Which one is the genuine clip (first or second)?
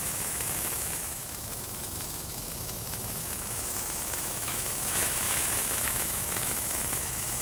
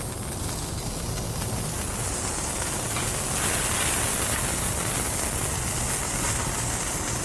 second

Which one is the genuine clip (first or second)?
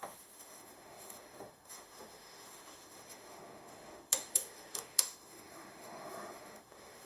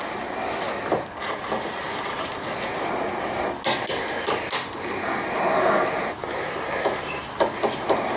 second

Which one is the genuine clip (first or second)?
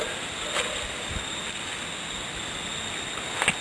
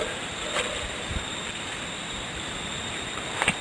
first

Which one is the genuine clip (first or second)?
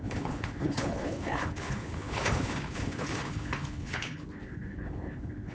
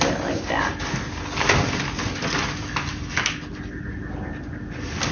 second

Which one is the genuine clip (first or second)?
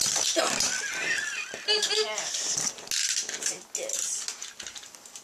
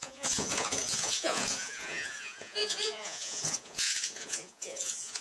first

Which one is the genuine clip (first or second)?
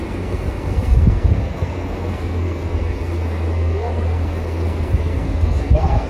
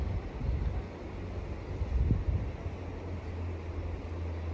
second